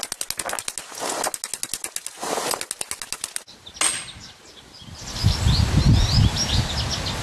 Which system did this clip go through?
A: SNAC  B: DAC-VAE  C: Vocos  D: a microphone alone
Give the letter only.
D